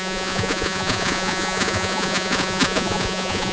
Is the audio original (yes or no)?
no